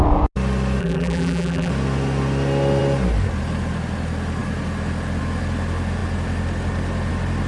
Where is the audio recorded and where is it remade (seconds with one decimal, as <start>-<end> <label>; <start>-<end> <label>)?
0.0-0.8 recorded; 0.8-1.7 remade; 1.7-7.5 recorded